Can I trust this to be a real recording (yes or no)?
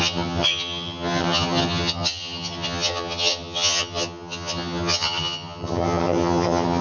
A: no